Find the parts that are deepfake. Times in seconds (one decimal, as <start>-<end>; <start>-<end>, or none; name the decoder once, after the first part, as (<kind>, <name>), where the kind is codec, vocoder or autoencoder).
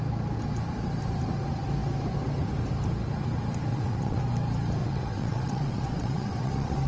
3.7-4.2 (vocoder, WaveNeXt); 4.8-6.9